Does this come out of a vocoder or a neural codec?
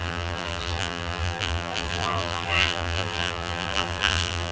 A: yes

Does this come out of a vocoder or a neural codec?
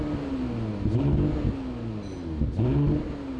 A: no